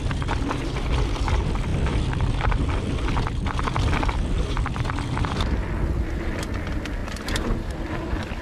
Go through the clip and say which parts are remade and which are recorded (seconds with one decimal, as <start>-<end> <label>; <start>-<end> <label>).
0.0-8.4 recorded